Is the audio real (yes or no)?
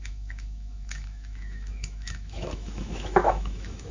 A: no